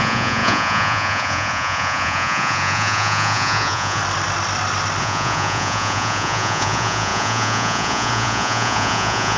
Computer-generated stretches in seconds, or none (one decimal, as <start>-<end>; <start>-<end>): 0.0-4.0; 5.0-9.4